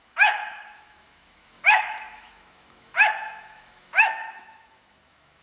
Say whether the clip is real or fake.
fake